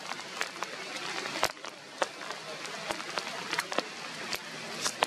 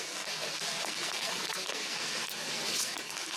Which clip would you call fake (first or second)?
second